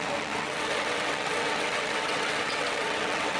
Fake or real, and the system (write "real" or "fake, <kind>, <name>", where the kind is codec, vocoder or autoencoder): fake, vocoder, WaveNeXt